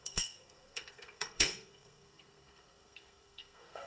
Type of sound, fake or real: fake